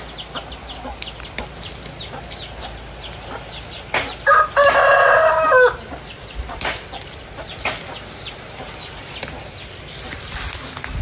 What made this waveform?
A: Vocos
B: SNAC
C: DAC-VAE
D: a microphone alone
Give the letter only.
D